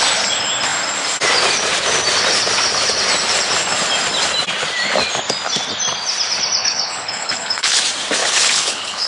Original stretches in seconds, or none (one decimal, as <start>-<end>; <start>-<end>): 0.0-6.6; 7.8-8.2